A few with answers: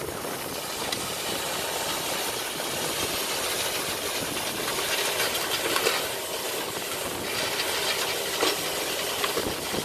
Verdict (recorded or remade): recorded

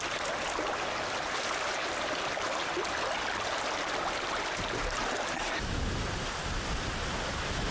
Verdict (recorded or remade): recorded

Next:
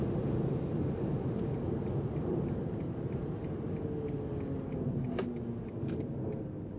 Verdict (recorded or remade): recorded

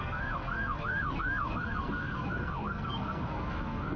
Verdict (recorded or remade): remade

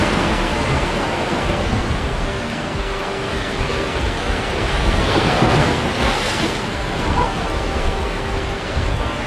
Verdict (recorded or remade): remade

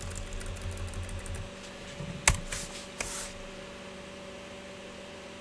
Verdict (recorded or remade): recorded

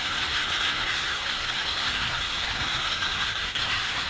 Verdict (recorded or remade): remade